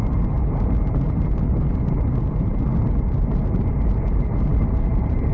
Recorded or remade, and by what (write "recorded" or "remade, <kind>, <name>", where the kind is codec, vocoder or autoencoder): remade, vocoder, BigVGAN v2